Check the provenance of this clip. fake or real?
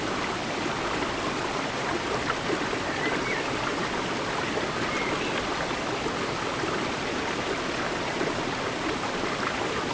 real